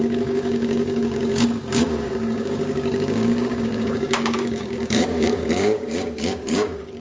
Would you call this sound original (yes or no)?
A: no